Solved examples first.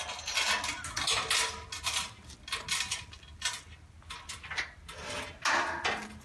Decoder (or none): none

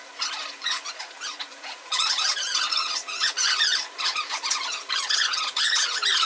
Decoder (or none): vocoder, Vocos